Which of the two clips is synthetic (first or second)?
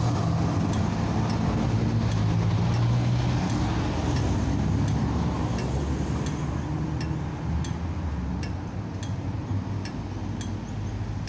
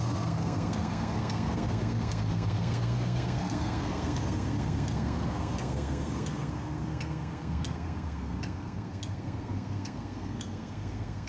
second